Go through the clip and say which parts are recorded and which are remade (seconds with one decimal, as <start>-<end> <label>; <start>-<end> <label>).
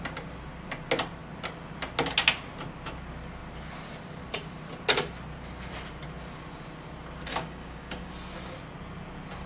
0.0-7.3 recorded; 7.3-8.1 remade; 8.1-9.5 recorded